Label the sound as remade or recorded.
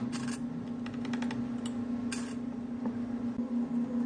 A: recorded